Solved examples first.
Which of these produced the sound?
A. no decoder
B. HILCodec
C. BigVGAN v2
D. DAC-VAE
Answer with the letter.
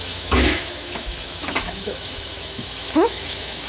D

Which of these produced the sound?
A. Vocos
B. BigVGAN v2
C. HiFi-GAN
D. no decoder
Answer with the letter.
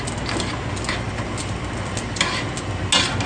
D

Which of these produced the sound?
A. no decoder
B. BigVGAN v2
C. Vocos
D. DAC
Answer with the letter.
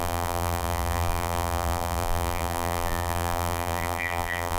B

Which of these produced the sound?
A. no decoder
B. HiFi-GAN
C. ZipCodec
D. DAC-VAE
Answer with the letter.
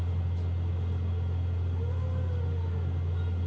A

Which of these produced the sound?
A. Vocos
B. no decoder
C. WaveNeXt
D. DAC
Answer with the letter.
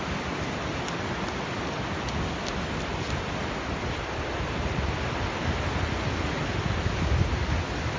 B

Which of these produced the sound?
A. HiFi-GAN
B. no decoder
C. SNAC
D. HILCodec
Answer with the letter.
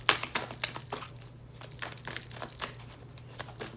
B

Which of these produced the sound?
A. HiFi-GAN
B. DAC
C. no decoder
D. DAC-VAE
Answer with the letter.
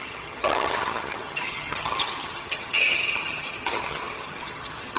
A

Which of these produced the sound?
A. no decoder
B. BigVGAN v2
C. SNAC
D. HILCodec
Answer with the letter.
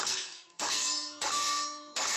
C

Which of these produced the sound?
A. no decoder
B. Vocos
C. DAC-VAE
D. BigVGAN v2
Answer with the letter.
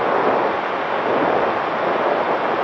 A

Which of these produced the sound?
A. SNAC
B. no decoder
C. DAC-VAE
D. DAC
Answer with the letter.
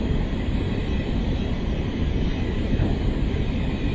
B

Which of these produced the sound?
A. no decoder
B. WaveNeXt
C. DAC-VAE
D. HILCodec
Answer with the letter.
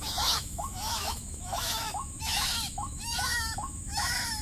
C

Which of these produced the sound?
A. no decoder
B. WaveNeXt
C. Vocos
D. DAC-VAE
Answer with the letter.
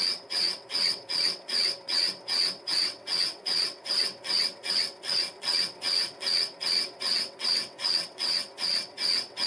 B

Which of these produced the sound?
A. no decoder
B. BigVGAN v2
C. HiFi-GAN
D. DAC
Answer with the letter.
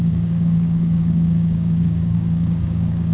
D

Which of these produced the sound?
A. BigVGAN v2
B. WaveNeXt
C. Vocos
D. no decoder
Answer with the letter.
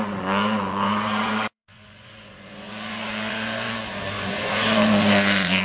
C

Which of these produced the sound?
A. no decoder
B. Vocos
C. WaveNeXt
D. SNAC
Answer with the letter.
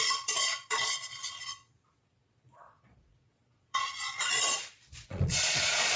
B